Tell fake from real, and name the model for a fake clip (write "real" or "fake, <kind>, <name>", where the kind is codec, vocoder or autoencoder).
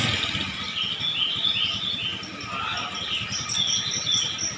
real